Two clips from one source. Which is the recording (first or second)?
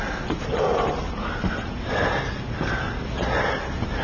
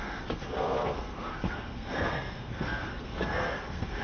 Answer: first